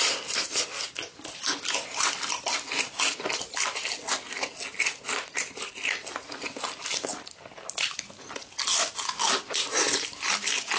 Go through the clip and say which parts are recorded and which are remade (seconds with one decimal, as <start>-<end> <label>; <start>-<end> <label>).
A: 0.0-10.8 recorded